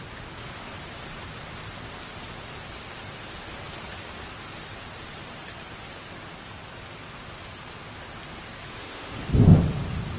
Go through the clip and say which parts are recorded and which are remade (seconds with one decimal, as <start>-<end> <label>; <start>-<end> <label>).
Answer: 0.0-8.7 recorded; 8.7-9.3 remade; 9.3-10.2 recorded